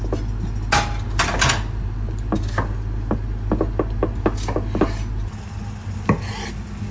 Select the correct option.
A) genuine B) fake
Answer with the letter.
A